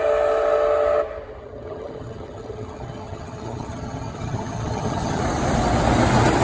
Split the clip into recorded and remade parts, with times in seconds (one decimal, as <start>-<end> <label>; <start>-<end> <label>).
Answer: 0.0-1.4 recorded; 1.4-5.2 remade; 5.2-6.4 recorded